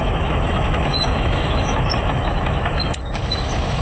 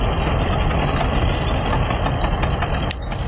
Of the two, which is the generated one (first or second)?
first